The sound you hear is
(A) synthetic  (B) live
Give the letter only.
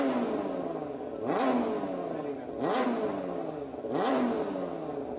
B